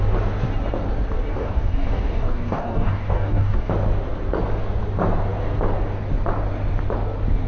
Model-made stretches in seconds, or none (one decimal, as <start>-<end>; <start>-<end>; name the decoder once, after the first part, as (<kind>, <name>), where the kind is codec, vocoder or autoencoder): 1.3-3.7 (codec, DAC)